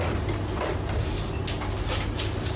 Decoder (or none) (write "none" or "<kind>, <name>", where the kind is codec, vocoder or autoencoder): none